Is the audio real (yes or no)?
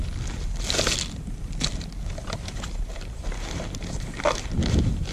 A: yes